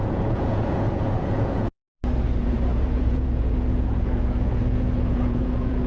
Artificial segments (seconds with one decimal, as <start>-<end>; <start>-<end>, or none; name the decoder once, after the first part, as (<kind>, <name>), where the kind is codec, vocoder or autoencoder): 0.0-1.9 (vocoder, Vocos); 2.4-5.9